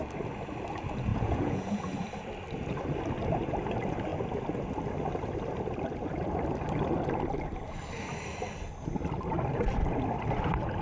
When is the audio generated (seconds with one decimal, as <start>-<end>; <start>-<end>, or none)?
1.1-1.8